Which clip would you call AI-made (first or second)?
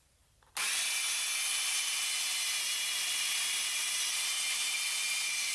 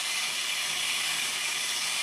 second